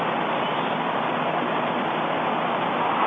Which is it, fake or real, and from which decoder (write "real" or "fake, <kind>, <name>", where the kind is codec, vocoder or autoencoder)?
real